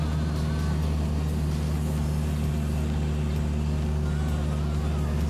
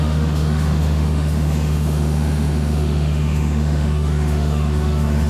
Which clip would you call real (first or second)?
first